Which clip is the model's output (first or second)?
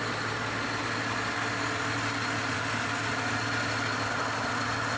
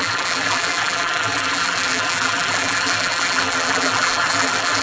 second